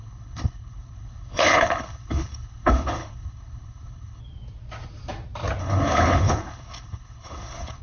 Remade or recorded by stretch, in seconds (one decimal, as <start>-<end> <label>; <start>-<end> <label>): 0.0-4.2 remade; 4.2-5.6 recorded; 5.6-7.8 remade